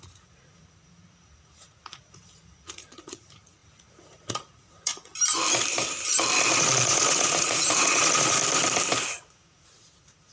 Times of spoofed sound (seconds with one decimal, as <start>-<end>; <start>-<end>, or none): 0.0-5.1; 6.5-8.4; 9.0-10.3